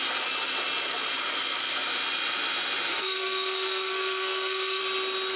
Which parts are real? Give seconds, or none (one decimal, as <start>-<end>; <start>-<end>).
0.0-2.9; 4.8-5.4